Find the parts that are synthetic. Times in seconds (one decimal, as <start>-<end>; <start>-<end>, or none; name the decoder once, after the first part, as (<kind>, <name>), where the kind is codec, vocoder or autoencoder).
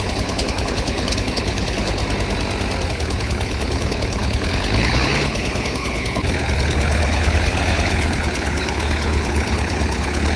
0.0-2.0 (codec, HILCodec); 2.9-10.4